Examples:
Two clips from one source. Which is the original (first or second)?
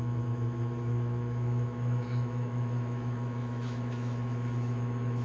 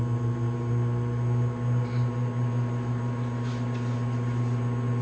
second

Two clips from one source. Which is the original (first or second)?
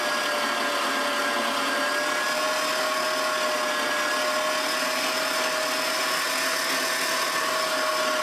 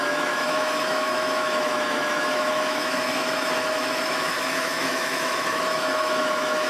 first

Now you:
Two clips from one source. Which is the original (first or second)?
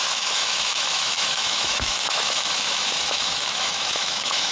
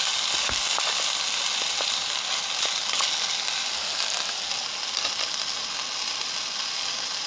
second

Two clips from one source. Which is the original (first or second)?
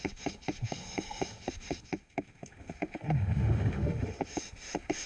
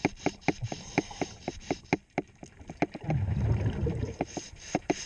second